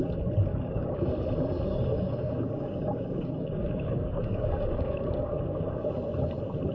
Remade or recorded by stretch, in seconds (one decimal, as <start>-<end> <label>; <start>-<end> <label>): 0.0-0.5 recorded; 0.5-1.1 remade; 1.1-1.9 recorded; 1.9-5.9 remade; 5.9-6.7 recorded